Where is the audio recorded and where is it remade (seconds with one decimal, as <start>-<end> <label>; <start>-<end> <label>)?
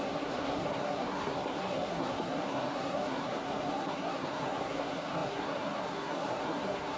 0.0-7.0 remade